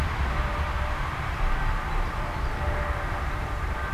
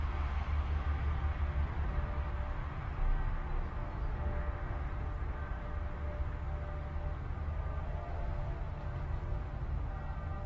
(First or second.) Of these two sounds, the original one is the second